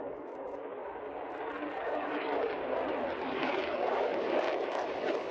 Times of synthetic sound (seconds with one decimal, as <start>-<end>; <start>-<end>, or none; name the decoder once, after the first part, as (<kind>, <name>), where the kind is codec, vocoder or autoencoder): 0.0-0.8 (codec, DAC); 1.8-2.6; 3.2-5.3